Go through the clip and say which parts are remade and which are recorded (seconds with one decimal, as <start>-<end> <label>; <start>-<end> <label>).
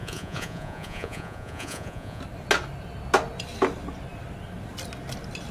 0.0-2.2 remade; 2.2-5.5 recorded